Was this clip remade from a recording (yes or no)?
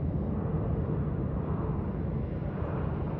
no